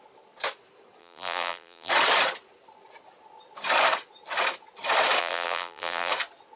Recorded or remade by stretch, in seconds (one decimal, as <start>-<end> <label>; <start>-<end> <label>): 0.0-1.0 recorded; 1.0-1.9 remade; 1.9-5.2 recorded; 5.2-6.1 remade; 6.1-6.6 recorded